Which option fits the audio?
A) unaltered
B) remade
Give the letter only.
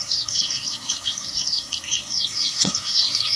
B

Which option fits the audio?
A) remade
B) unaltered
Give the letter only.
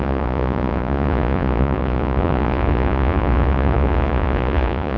A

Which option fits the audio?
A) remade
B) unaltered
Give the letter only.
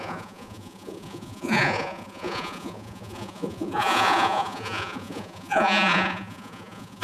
A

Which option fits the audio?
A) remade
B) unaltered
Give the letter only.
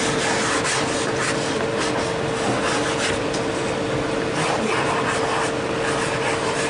B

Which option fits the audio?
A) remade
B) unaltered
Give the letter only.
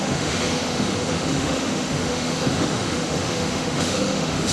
A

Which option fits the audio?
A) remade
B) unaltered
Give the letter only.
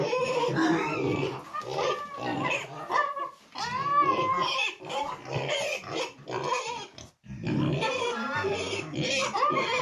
B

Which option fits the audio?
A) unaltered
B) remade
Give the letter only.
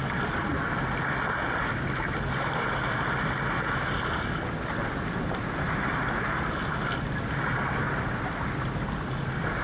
A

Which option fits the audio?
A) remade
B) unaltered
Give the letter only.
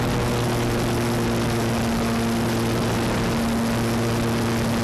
B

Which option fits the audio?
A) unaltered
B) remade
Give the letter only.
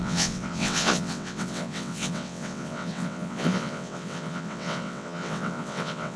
B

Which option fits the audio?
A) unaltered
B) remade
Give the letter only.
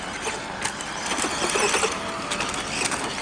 A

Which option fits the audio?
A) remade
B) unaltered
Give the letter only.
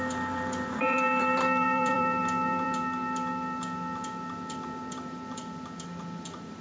A